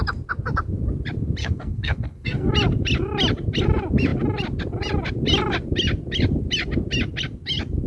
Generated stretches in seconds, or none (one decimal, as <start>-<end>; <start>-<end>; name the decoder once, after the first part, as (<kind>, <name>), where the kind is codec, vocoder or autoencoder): 1.4-2.5 (codec, SNAC)